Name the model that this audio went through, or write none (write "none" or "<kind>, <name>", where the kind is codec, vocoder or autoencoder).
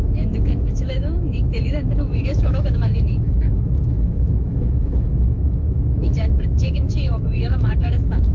autoencoder, DAC-VAE